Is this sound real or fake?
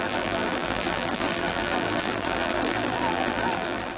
fake